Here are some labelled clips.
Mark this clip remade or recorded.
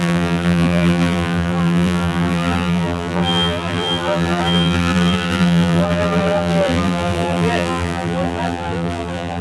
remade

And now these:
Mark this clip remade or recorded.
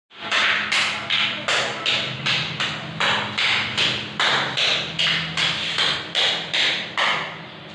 recorded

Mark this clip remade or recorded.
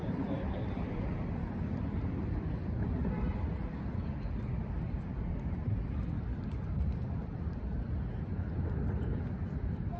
remade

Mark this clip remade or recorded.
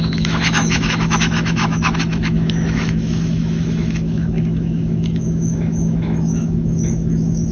remade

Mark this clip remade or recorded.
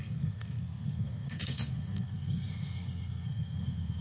remade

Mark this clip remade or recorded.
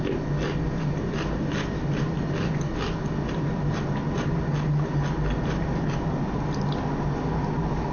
recorded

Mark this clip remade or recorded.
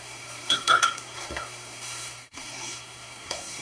remade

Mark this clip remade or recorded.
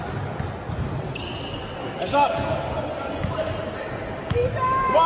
recorded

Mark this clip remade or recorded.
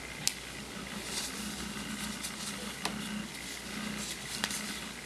recorded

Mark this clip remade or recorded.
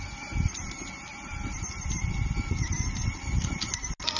recorded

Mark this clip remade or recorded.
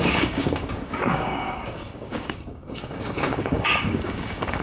remade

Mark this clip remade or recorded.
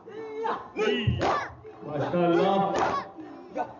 recorded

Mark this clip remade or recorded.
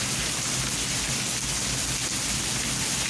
recorded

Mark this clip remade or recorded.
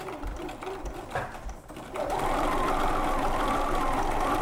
recorded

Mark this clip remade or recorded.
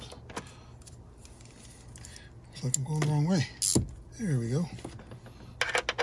recorded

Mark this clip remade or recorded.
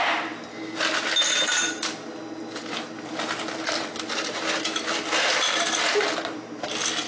recorded